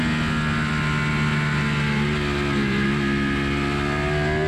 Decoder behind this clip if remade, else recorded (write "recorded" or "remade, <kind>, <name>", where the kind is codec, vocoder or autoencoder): recorded